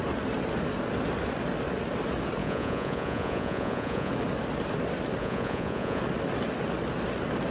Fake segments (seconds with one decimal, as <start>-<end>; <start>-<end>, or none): 2.4-4.1; 5.2-6.0